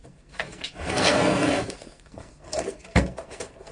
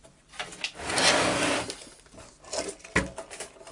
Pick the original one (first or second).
second